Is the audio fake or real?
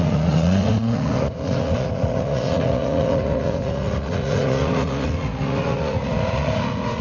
fake